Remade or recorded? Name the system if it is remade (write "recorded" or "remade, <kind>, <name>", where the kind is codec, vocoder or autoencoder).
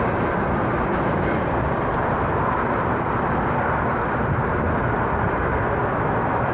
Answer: recorded